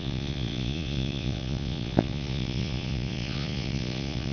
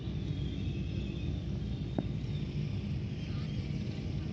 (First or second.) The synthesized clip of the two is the first